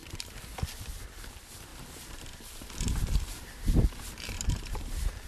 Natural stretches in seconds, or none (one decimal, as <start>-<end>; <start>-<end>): 0.5-1.7